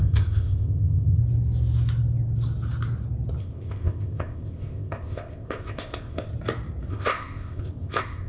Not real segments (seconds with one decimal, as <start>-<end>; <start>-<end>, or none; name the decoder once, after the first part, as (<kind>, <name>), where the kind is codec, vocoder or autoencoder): 0.0-1.2 (codec, ZipCodec); 3.4-6.3; 6.9-8.3

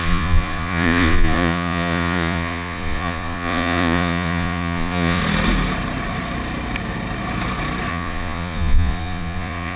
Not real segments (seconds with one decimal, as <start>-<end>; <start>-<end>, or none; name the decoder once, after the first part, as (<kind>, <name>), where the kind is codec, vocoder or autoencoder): 0.0-5.2 (vocoder, Vocos); 7.9-9.8

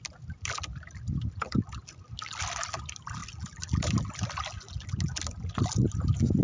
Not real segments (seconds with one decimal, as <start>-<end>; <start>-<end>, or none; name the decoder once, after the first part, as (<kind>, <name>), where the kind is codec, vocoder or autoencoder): none

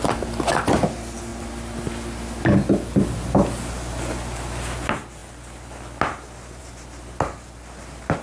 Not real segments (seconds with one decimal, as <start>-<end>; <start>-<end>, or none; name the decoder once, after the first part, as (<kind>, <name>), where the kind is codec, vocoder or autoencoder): none

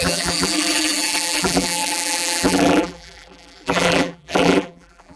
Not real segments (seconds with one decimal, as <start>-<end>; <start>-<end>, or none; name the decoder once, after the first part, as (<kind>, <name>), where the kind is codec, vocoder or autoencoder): 0.0-5.2 (vocoder, BigVGAN v2)

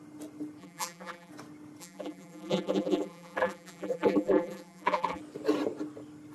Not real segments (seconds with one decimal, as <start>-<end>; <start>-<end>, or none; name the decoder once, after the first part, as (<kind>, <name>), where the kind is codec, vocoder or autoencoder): 0.6-1.3 (vocoder, BigVGAN v2); 1.8-5.2